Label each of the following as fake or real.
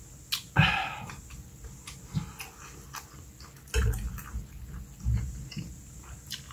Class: real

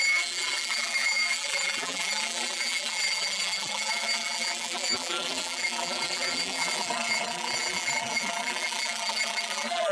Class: fake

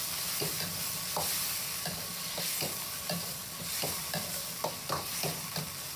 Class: real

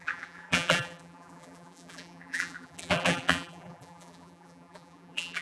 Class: fake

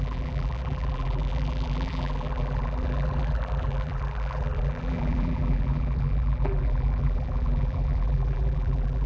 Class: fake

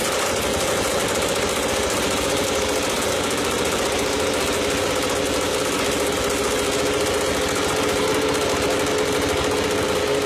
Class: real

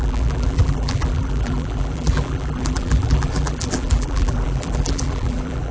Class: fake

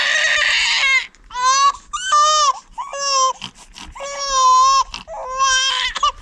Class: real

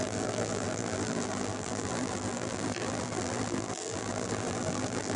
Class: fake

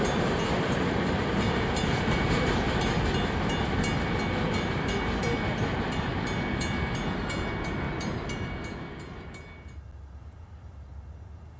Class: real